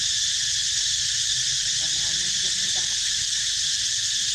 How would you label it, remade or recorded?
remade